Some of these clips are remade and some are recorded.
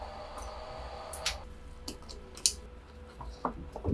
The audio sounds recorded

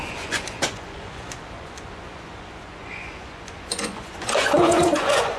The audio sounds remade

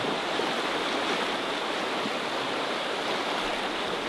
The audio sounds recorded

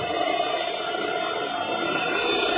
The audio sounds recorded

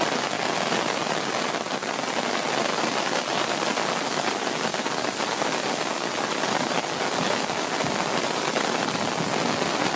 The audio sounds recorded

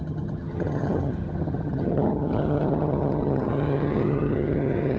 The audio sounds remade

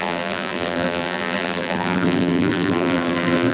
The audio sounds remade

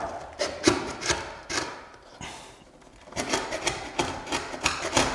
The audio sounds remade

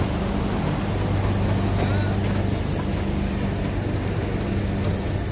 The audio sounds recorded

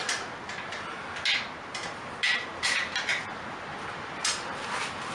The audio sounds recorded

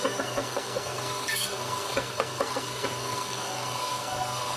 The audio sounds remade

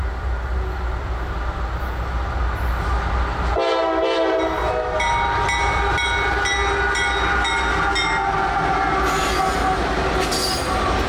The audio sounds recorded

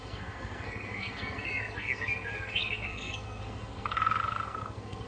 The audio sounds remade